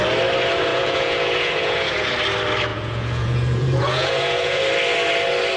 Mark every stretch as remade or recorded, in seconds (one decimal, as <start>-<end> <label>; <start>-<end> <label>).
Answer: 0.0-0.7 recorded; 0.7-2.1 remade; 2.1-2.7 recorded; 2.7-4.6 remade; 4.6-5.6 recorded